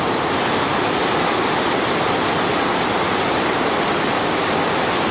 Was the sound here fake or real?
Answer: real